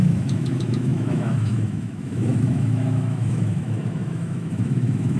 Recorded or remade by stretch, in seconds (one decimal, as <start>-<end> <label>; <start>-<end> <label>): 0.0-5.2 remade